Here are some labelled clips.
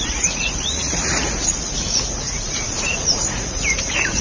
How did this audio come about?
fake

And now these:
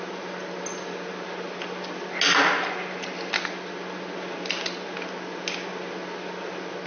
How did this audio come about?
real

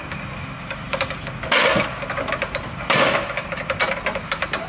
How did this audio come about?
real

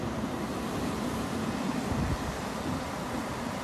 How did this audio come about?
real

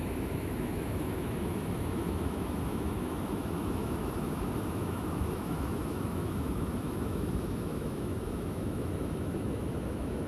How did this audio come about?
fake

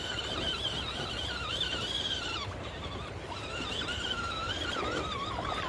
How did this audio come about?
fake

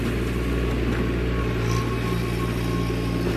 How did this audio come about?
real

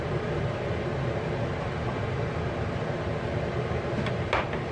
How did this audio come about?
real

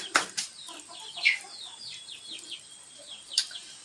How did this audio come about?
fake